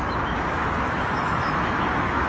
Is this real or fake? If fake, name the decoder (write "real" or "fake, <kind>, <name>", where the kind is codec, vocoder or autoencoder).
fake, autoencoder, DAC-VAE